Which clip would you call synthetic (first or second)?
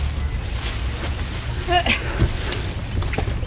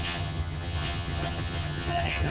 second